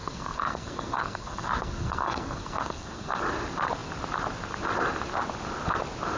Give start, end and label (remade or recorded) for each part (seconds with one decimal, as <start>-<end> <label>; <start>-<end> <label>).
0.0-3.2 remade; 3.2-6.2 recorded